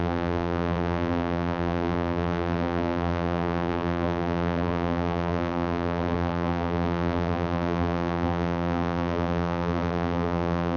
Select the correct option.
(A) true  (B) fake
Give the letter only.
B